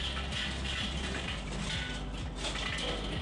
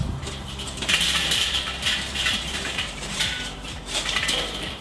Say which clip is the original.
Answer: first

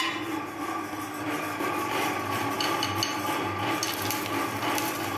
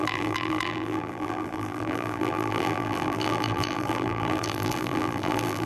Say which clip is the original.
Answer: first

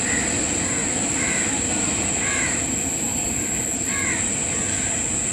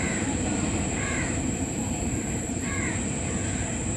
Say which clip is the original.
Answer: first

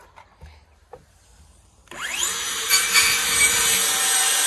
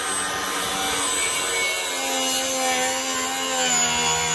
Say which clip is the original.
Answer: second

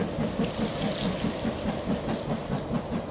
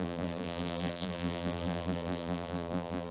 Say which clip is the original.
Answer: first